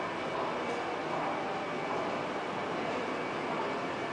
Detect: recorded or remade recorded